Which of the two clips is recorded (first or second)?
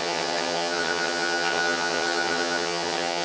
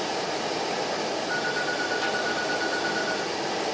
second